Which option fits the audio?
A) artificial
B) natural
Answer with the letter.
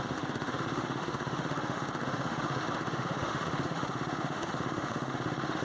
A